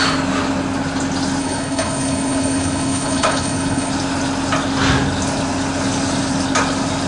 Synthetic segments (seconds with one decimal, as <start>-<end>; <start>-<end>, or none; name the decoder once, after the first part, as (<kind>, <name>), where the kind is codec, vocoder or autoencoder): 1.4-3.9 (codec, HILCodec)